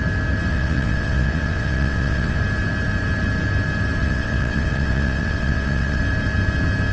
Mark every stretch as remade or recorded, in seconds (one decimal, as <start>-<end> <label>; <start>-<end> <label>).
0.0-0.5 recorded; 0.5-2.4 remade; 2.4-4.0 recorded; 4.0-6.0 remade; 6.0-6.9 recorded